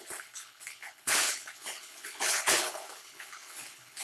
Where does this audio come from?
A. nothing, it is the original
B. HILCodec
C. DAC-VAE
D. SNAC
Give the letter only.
B